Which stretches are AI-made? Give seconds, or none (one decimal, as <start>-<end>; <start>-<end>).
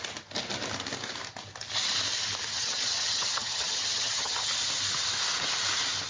2.5-4.5